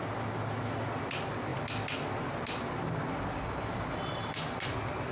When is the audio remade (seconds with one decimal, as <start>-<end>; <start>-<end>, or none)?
none